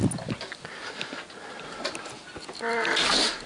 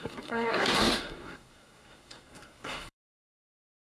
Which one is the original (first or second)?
first